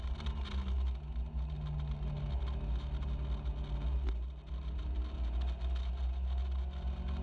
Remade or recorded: recorded